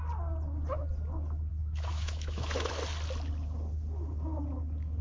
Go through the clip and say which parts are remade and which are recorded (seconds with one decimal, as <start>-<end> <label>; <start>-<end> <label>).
0.0-1.5 recorded; 1.5-2.7 remade; 2.7-5.0 recorded